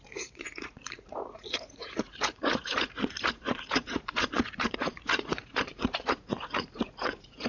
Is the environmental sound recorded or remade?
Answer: remade